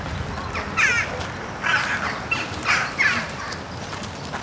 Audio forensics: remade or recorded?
recorded